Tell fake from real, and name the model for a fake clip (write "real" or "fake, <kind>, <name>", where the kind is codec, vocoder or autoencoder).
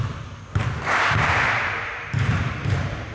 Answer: fake, vocoder, BigVGAN v2